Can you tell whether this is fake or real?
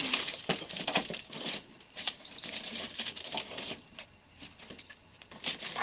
fake